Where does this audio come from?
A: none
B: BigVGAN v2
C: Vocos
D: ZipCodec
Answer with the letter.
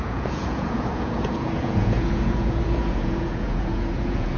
C